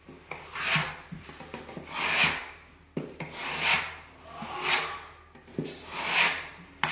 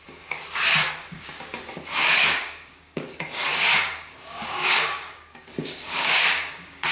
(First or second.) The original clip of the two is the first